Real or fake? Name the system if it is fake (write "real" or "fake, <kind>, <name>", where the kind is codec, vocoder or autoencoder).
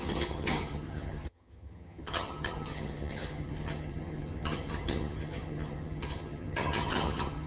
fake, vocoder, HiFi-GAN